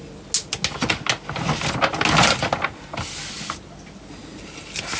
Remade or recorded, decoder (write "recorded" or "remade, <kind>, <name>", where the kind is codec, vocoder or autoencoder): recorded